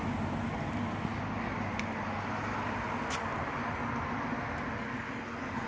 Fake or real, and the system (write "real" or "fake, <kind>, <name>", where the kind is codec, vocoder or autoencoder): real